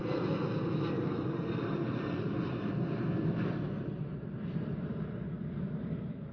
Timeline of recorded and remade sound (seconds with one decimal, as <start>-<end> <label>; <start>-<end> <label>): 0.0-6.3 recorded